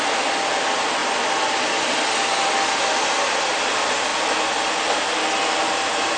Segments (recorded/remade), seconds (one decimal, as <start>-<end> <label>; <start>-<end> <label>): 0.0-6.2 recorded